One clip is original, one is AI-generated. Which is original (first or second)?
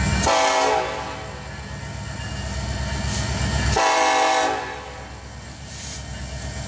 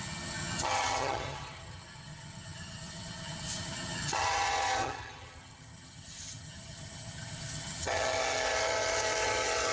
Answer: first